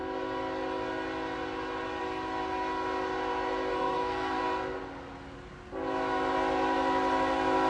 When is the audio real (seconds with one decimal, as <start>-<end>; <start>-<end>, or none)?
0.0-3.7; 4.4-7.7